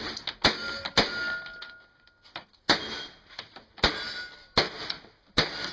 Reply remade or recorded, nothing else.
recorded